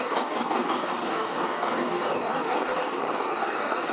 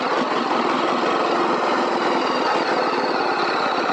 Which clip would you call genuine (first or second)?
second